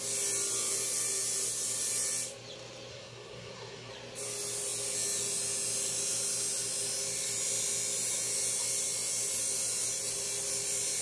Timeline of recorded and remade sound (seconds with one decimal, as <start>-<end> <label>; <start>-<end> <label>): 0.0-2.9 recorded; 2.9-3.9 remade; 3.9-11.0 recorded